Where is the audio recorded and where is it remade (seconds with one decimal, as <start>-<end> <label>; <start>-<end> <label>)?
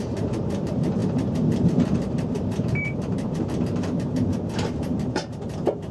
0.0-5.9 remade